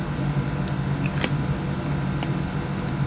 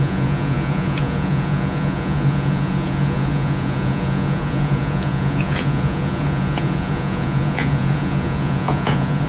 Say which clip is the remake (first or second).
second